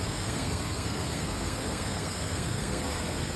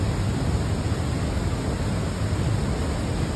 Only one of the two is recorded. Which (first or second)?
second